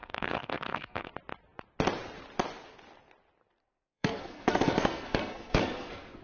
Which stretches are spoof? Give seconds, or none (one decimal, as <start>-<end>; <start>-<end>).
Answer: 0.0-1.1; 3.6-6.2